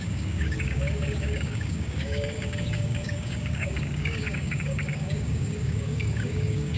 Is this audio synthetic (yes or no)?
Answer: yes